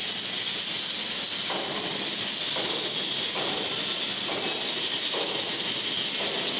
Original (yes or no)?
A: yes